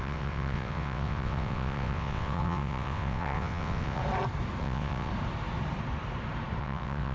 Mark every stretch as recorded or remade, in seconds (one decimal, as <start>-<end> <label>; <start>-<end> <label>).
0.0-4.0 remade; 4.0-4.6 recorded; 4.6-5.1 remade; 5.1-6.6 recorded; 6.6-7.1 remade